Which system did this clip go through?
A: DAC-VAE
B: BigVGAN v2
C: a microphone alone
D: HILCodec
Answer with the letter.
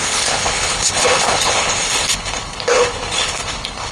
D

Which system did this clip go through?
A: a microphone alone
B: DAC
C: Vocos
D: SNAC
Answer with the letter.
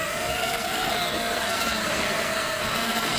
D